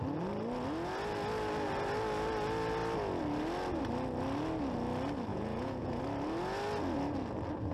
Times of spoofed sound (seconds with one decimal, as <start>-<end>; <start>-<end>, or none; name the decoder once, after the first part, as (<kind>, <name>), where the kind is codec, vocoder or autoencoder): 5.3-6.0 (vocoder, Vocos)